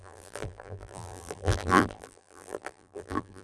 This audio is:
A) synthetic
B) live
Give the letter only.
A